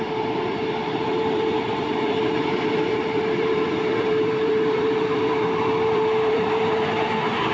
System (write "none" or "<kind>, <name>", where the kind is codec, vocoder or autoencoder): vocoder, BigVGAN v2